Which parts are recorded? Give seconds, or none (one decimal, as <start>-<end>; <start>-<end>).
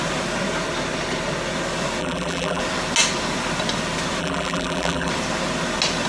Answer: 0.0-2.0; 2.6-4.2; 5.1-6.1